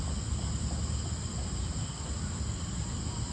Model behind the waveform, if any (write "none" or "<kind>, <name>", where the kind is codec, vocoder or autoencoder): none